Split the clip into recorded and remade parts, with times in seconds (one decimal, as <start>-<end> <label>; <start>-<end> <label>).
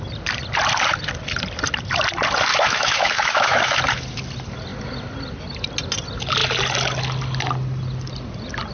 0.0-2.5 recorded; 2.5-3.8 remade; 3.8-8.7 recorded